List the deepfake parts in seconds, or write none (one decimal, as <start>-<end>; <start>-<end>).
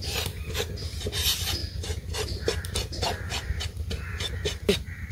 1.6-4.3